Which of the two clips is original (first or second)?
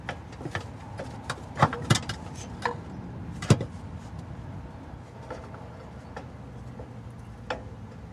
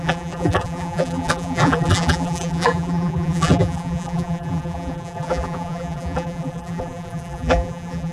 first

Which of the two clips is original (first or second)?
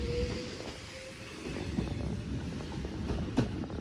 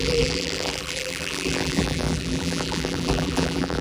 first